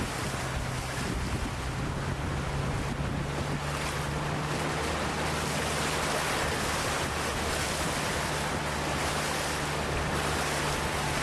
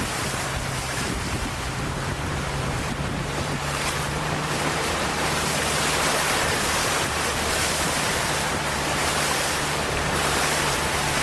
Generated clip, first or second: second